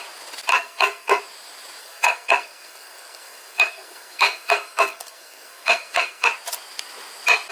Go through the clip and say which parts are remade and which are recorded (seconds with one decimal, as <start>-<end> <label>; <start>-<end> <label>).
0.0-0.5 recorded; 0.5-1.2 remade; 1.2-1.8 recorded; 1.8-6.3 remade; 6.3-7.5 recorded

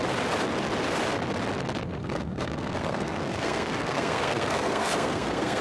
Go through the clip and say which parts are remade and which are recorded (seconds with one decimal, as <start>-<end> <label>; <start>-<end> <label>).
0.0-2.0 recorded; 2.0-5.6 remade

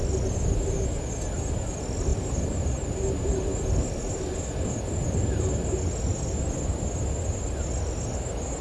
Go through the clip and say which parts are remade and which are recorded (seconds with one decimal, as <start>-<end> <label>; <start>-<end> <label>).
0.0-8.6 recorded

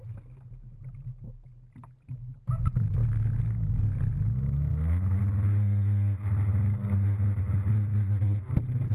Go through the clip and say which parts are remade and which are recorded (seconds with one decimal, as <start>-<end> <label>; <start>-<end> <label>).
0.0-4.7 recorded; 4.7-5.2 remade; 5.2-8.9 recorded